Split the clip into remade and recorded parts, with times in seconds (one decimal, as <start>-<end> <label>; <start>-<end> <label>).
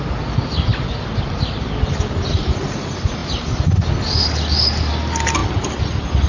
0.0-6.3 recorded